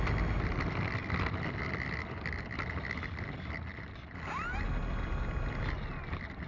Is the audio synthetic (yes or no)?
no